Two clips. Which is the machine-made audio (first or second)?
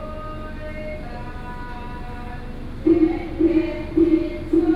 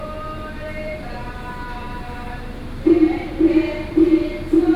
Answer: second